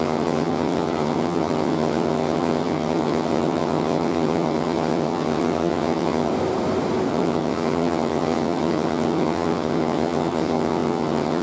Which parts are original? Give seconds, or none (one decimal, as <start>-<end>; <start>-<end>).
6.3-7.1